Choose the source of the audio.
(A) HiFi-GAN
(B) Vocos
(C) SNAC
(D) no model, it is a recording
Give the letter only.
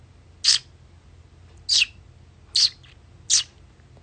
D